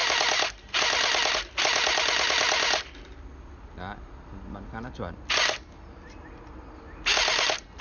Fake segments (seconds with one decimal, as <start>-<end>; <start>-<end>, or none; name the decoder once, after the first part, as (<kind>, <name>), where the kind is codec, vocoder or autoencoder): none